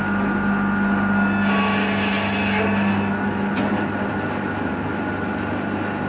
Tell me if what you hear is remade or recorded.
recorded